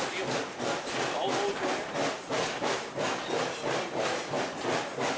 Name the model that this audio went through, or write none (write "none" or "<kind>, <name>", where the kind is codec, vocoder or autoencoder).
none